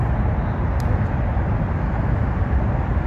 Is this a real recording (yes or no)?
yes